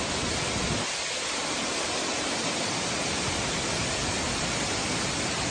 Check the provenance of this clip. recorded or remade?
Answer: recorded